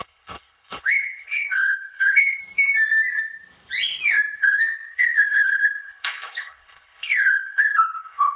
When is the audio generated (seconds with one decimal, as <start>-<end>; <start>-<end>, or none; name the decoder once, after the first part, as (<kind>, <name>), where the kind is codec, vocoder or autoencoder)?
0.0-2.4 (codec, HILCodec); 4.4-8.4